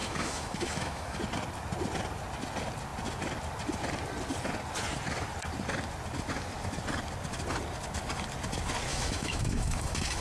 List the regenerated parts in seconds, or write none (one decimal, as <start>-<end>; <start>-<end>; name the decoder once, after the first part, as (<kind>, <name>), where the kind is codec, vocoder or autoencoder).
0.0-1.2 (autoencoder, DAC-VAE); 8.9-10.2